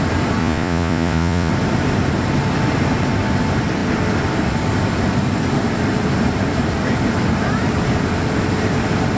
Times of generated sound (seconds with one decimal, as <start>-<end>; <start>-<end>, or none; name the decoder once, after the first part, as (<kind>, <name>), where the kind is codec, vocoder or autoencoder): 0.4-1.5 (vocoder, Vocos)